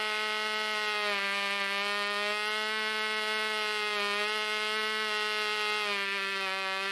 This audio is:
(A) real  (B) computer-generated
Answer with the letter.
A